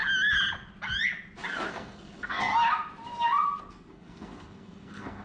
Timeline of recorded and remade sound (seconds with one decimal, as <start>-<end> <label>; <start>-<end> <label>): 0.0-1.7 recorded; 1.7-2.5 remade; 2.5-3.7 recorded; 3.7-5.2 remade